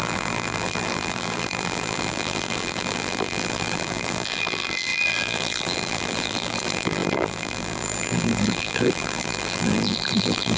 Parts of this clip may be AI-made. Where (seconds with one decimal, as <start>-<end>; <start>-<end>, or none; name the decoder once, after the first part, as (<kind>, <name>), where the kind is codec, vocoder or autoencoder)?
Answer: 0.0-10.6 (vocoder, BigVGAN v2)